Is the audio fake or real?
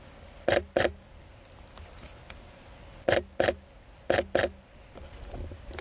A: real